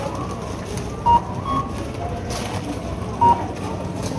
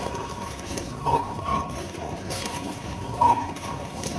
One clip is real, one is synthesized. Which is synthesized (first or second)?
second